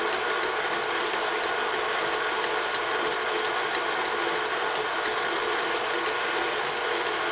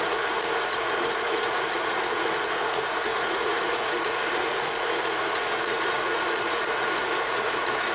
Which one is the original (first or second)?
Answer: first